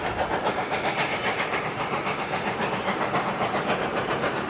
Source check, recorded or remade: remade